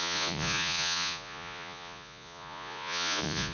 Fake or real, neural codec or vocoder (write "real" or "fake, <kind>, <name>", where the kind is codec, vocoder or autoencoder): fake, vocoder, Vocos